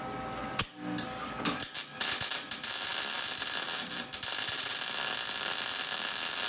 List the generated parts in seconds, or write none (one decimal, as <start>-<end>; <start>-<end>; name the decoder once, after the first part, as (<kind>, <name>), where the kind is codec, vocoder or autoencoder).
none